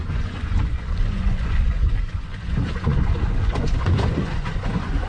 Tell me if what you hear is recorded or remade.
remade